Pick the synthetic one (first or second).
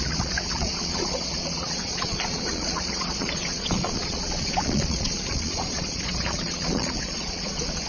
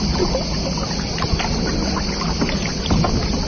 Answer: first